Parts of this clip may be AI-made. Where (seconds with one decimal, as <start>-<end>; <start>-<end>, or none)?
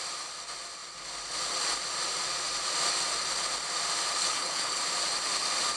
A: 4.2-4.8